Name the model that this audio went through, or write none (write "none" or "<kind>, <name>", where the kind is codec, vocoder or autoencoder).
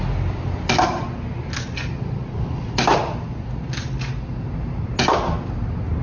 none